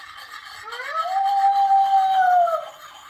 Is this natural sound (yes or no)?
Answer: yes